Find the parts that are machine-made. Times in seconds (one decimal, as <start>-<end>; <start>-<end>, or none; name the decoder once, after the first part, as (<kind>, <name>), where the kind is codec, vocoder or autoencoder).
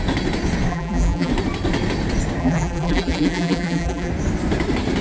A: 0.7-1.3 (vocoder, BigVGAN v2); 2.4-4.1